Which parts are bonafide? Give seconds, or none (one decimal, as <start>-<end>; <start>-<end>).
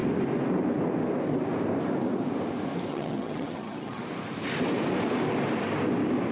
0.0-2.9; 4.0-6.3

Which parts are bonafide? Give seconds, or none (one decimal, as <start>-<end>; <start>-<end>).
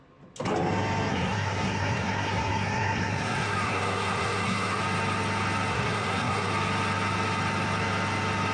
0.0-1.1; 4.8-5.7; 6.5-8.5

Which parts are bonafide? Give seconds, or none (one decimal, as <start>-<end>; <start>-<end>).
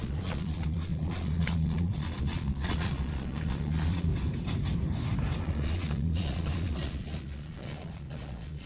4.1-5.4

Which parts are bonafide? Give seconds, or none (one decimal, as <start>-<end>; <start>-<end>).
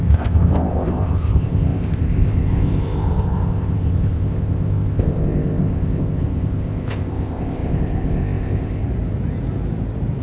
8.8-10.2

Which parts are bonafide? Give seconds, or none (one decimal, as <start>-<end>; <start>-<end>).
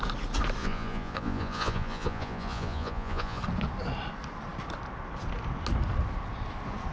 0.0-0.6; 3.4-6.9